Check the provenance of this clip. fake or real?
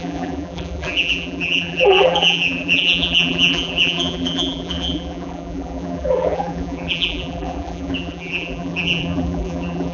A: fake